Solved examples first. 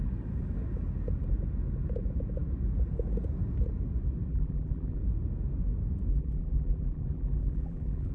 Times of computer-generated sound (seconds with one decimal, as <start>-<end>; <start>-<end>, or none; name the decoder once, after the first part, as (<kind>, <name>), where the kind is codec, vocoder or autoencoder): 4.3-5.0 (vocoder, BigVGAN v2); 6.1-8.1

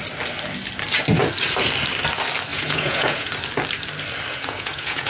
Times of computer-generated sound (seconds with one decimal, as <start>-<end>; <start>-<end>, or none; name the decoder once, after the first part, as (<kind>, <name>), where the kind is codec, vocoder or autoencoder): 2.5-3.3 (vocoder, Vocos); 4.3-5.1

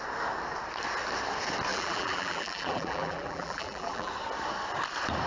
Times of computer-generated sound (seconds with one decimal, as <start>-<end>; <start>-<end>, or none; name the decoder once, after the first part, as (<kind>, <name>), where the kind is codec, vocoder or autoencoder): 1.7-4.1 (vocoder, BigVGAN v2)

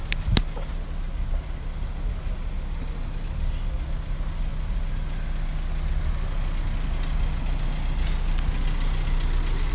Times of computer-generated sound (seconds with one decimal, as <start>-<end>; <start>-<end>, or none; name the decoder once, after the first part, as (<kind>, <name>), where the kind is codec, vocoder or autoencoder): none